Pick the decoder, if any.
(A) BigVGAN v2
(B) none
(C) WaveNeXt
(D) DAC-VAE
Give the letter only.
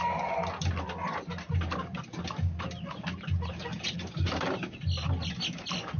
B